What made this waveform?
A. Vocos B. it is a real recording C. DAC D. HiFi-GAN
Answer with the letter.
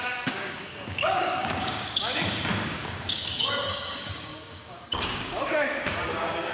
C